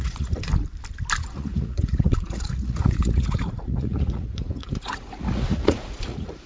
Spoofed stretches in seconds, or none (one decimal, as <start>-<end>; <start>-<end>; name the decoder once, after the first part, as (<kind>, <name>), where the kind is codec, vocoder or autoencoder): 0.0-0.5 (vocoder, Vocos); 1.2-6.5